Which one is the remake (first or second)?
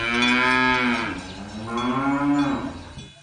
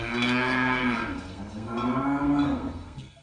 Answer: second